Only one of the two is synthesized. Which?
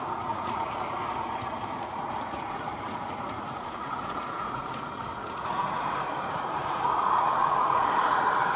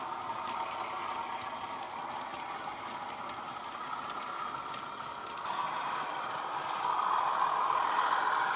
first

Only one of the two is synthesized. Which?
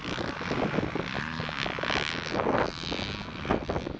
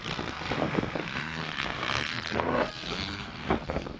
second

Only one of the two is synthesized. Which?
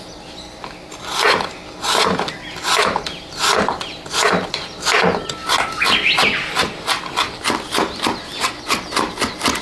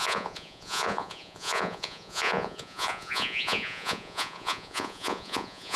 second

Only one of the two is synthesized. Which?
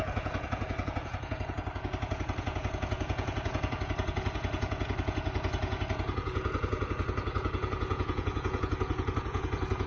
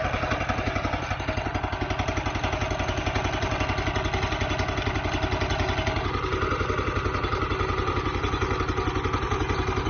first